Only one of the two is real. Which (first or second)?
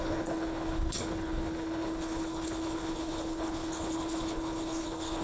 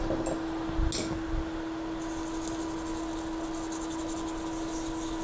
second